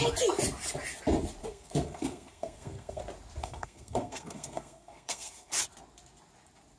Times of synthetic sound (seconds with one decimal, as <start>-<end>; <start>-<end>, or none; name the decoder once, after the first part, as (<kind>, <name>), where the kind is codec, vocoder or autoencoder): 1.4-3.0 (codec, SNAC); 3.4-5.5